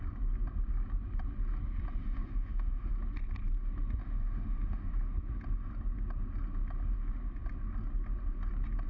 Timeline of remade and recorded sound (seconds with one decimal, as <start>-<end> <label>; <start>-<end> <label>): 0.0-2.0 recorded; 2.0-2.9 remade; 2.9-4.0 recorded; 4.0-4.9 remade; 4.9-8.9 recorded